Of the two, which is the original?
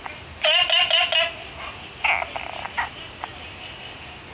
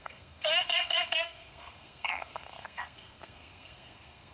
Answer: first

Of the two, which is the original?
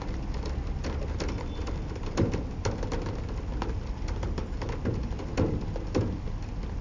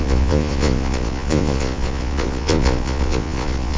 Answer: first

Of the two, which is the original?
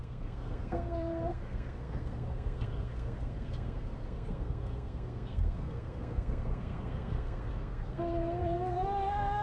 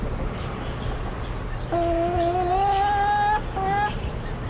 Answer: second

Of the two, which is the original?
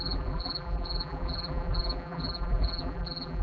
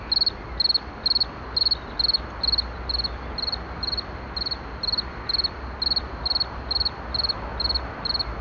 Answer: second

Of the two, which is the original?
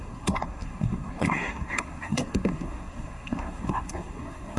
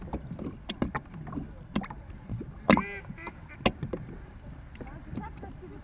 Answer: second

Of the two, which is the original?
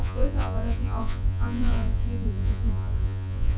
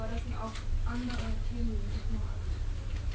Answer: second